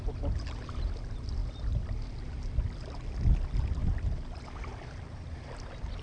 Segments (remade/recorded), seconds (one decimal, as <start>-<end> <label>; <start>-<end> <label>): 0.0-6.0 recorded